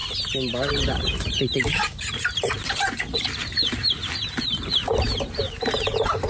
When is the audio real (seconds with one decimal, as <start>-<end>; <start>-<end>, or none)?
0.0-0.7